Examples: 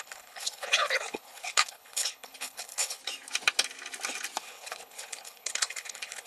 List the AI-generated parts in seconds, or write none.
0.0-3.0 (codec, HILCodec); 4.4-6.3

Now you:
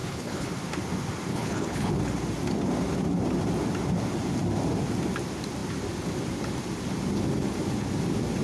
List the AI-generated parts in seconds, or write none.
0.0-0.5 (codec, HILCodec); 1.3-1.9

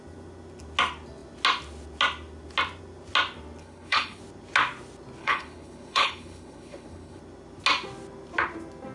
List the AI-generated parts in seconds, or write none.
3.6-4.2 (codec, HILCodec); 5.2-7.2

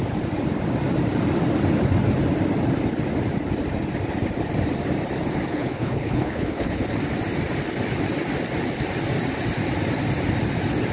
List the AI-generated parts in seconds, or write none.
5.5-6.8 (codec, HILCodec)

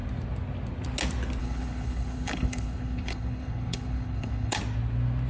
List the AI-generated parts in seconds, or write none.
1.4-4.6 (codec, HILCodec)

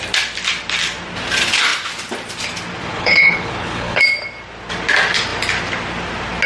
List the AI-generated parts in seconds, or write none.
2.9-4.0 (codec, HILCodec)